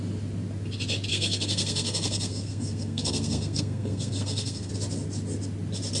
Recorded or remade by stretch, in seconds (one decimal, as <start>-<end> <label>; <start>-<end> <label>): 0.0-1.1 recorded; 1.1-4.7 remade; 4.7-6.0 recorded